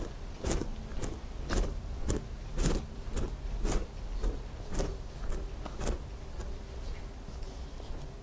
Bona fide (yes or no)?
yes